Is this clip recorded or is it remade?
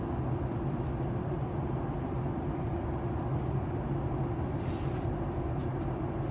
recorded